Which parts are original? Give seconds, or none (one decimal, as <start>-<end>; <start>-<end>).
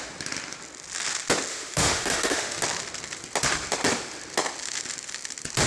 0.0-1.5; 2.6-5.7